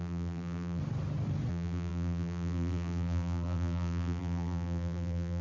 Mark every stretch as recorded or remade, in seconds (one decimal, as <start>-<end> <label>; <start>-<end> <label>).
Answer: 0.0-0.8 remade; 0.8-1.5 recorded; 1.5-5.4 remade